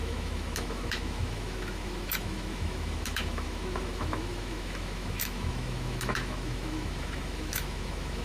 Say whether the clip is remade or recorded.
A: remade